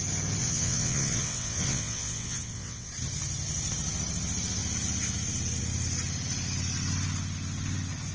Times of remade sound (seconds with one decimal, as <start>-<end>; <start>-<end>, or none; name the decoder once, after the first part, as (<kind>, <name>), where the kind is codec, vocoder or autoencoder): 0.4-2.9 (vocoder, WaveNeXt)